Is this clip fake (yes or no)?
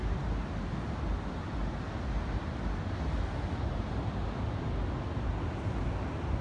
no